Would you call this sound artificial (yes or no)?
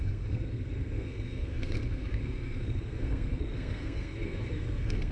yes